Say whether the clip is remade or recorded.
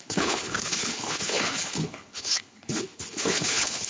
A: remade